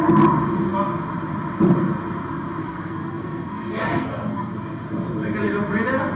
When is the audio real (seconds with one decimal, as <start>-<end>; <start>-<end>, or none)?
0.0-2.6; 4.5-6.2